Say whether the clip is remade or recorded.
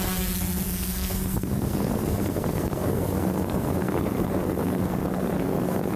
remade